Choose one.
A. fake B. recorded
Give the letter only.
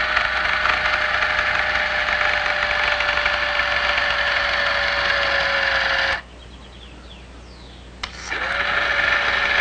B